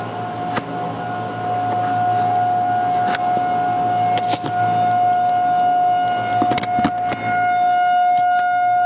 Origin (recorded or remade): recorded